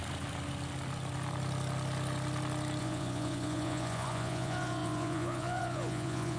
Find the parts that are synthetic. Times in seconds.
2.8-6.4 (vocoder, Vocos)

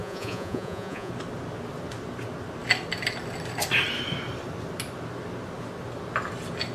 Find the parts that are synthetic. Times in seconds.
0.0-1.1 (vocoder, Vocos)

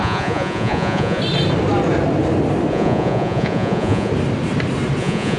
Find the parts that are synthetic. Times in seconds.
0.0-1.2 (vocoder, Vocos); 2.7-4.1; 5.0-5.4

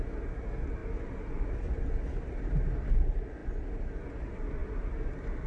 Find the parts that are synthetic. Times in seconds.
none

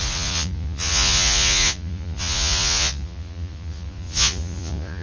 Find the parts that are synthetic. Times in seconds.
0.0-5.0 (vocoder, Vocos)

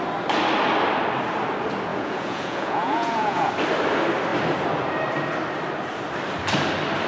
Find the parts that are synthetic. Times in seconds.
1.9-3.5 (vocoder, Vocos)

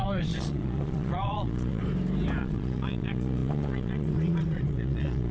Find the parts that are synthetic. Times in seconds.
0.0-1.8 (vocoder, Vocos); 2.4-5.3

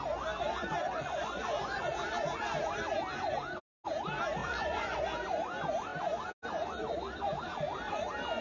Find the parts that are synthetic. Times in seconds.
0.7-1.9 (vocoder, Vocos); 4.4-5.0